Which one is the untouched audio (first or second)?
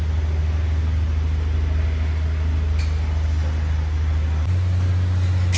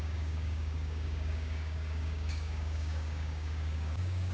first